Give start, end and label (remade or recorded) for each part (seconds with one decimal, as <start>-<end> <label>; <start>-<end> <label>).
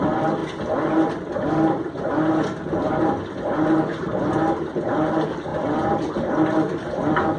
0.0-7.4 recorded